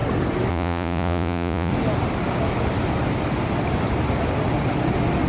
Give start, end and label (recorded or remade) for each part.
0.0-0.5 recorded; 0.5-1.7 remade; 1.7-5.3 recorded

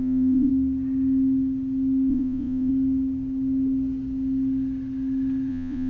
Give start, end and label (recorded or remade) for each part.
0.0-0.5 remade; 0.5-2.1 recorded; 2.1-2.7 remade; 2.7-5.5 recorded; 5.5-5.9 remade

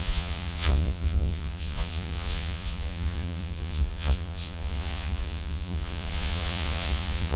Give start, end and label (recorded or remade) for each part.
0.0-7.4 remade

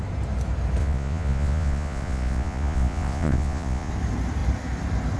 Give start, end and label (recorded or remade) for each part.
0.0-0.8 recorded; 0.8-3.9 remade; 3.9-5.2 recorded

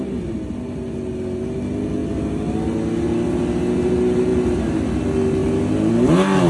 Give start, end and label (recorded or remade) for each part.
0.0-6.5 recorded